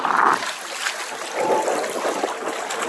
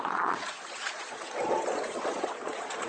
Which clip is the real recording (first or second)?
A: first